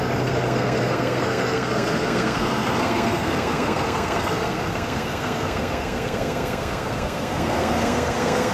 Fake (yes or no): yes